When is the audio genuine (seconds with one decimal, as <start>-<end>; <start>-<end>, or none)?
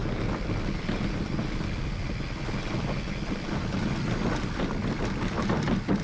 0.0-6.0